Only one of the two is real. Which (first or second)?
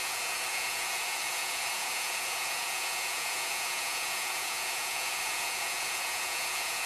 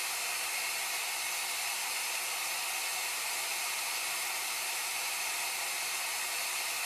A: second